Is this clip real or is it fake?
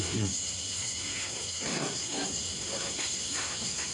fake